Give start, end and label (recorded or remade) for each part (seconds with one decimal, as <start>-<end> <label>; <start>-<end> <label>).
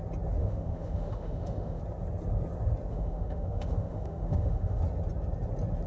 0.0-0.4 recorded; 0.4-1.8 remade; 1.8-2.9 recorded; 2.9-4.8 remade; 4.8-5.9 recorded